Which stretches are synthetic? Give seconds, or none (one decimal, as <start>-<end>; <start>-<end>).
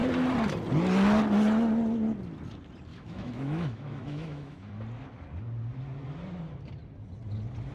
2.9-4.7